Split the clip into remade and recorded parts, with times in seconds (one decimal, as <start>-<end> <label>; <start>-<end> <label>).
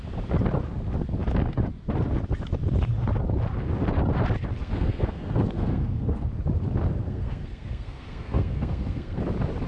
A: 0.0-4.6 recorded; 4.6-6.3 remade; 6.3-7.0 recorded; 7.0-9.2 remade; 9.2-9.7 recorded